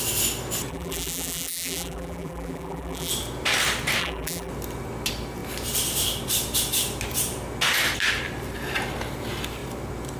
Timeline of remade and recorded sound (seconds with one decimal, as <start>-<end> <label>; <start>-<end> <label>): 0.0-0.7 recorded; 0.7-3.1 remade; 3.1-4.0 recorded; 4.0-4.5 remade; 4.5-10.2 recorded